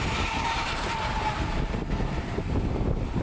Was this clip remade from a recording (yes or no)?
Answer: yes